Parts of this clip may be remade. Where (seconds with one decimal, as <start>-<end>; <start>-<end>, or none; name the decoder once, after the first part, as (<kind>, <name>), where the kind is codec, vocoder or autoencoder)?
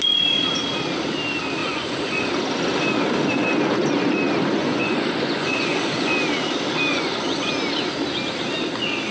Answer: 1.6-2.3 (vocoder, Vocos); 4.6-6.1; 6.9-7.5